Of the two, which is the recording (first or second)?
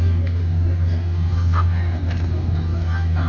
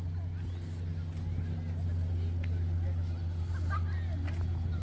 second